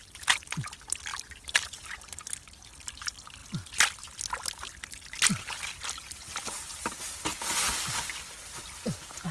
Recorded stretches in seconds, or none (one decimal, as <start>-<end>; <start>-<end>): 0.0-1.1; 2.1-9.3